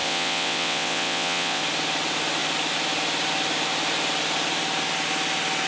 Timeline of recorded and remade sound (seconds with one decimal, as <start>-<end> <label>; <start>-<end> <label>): 0.0-1.6 remade; 1.6-5.7 recorded